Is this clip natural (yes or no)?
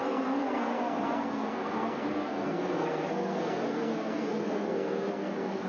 no